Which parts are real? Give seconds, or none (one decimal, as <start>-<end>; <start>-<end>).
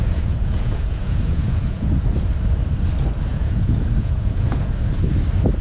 2.1-3.3; 4.7-5.6